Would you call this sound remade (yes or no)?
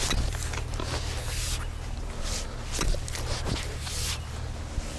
no